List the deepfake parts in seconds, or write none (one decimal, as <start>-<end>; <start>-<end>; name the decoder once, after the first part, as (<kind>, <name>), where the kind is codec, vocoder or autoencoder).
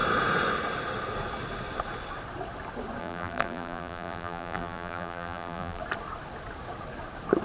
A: 3.0-5.8 (vocoder, BigVGAN v2)